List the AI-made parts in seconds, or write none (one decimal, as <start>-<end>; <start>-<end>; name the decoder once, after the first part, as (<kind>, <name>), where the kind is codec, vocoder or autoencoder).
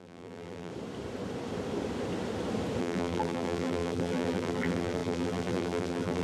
0.0-0.7 (vocoder, BigVGAN v2); 2.8-6.2